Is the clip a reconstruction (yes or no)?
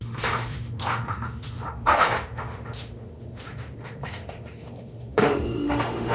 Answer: yes